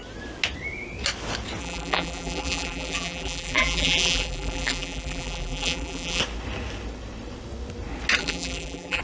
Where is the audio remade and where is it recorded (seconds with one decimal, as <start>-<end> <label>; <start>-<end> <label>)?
0.0-1.6 recorded; 1.6-6.2 remade; 6.2-8.2 recorded; 8.2-9.0 remade

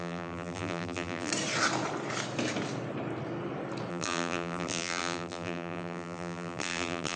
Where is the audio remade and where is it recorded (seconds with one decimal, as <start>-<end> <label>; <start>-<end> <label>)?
0.0-1.3 remade; 1.3-3.9 recorded; 3.9-7.2 remade

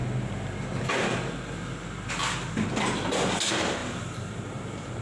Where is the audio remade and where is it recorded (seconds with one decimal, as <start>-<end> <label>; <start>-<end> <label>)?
0.0-3.8 recorded; 3.8-5.0 remade

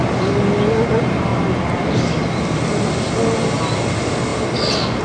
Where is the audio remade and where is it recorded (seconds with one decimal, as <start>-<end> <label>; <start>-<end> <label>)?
0.0-5.0 recorded

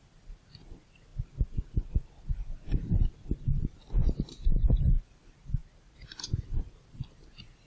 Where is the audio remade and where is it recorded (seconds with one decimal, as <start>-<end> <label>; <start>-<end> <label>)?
0.0-7.7 remade

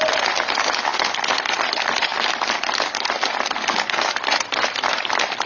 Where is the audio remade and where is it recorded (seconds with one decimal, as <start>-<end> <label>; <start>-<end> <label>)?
0.0-2.1 recorded; 2.1-5.5 remade

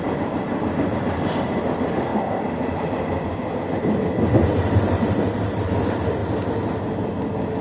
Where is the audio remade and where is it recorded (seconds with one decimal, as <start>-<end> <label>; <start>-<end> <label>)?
0.0-2.1 remade; 2.1-3.7 recorded; 3.7-6.2 remade; 6.2-7.6 recorded

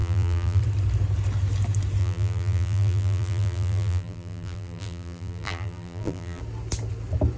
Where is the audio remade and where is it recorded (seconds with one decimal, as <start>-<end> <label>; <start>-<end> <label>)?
0.0-0.6 remade; 0.6-2.0 recorded; 2.0-6.4 remade; 6.4-7.4 recorded